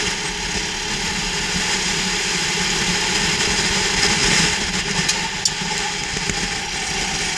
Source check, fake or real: real